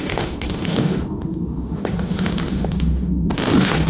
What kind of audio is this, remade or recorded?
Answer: remade